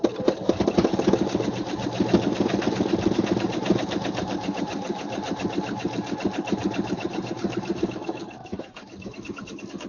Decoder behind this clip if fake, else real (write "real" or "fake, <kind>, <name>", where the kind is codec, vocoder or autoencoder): real